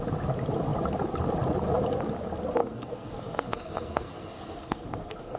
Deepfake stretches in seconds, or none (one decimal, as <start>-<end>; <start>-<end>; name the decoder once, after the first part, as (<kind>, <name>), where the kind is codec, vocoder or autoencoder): 2.6-5.4 (codec, SNAC)